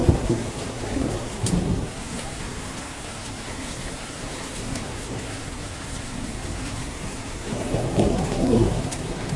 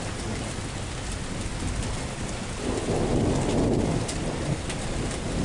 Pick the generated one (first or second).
first